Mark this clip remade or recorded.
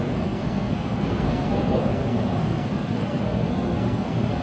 remade